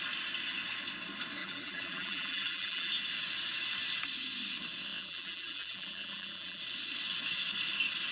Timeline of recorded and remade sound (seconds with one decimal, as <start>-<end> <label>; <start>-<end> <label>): 0.0-1.4 recorded; 1.4-2.9 remade; 2.9-5.0 recorded; 5.0-6.6 remade; 6.6-8.1 recorded